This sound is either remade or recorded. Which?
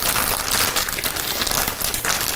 recorded